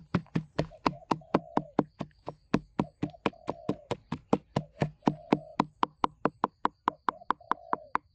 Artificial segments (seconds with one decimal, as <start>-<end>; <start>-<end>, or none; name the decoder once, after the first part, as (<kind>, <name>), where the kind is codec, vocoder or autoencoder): 0.0-1.4 (vocoder, Vocos)